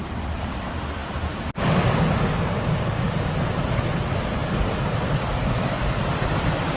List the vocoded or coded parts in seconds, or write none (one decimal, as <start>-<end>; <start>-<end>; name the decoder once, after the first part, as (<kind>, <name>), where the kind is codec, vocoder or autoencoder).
none